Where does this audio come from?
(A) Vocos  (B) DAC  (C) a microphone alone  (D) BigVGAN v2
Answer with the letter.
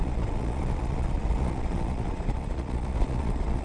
A